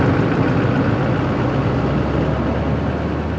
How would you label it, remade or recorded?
recorded